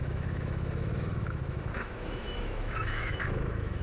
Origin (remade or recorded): remade